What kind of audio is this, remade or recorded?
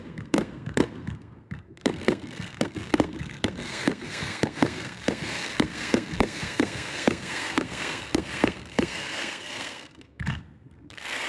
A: remade